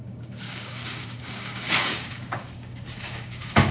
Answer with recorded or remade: remade